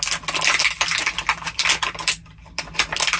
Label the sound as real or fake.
real